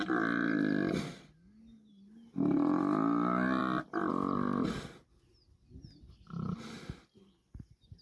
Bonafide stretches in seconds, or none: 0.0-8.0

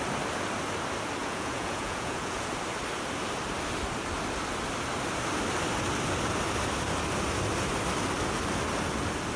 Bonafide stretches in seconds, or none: 0.0-1.2; 2.5-9.4

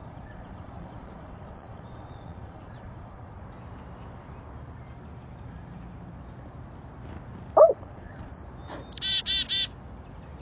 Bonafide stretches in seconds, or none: 3.4-7.6; 8.3-10.4

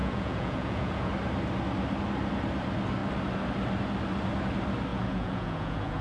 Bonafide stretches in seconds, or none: 1.1-4.9

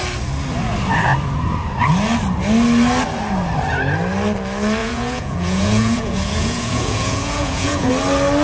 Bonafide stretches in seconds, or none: 0.0-4.8; 7.9-8.4

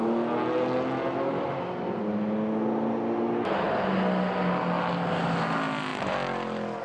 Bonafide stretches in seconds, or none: 0.0-6.8

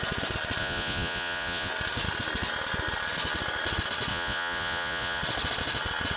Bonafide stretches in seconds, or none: 0.0-0.6; 1.7-4.1; 5.2-6.2